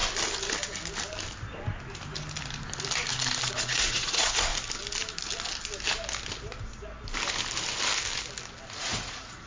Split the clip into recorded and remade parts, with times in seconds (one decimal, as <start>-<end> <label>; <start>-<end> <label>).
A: 0.0-3.5 recorded; 3.5-4.5 remade; 4.5-8.8 recorded; 8.8-9.5 remade